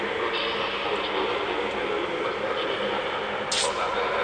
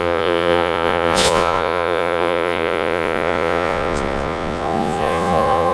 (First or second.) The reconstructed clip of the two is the second